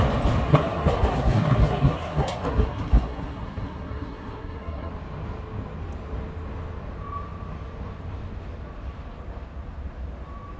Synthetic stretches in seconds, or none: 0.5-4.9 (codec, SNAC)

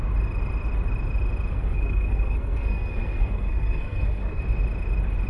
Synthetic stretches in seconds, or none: 1.5-4.4 (codec, SNAC)

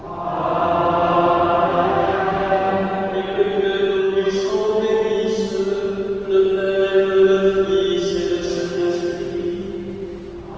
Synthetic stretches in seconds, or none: 1.7-2.7 (codec, SNAC); 4.0-4.5; 8.5-9.7